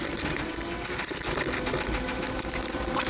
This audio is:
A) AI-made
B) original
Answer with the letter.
B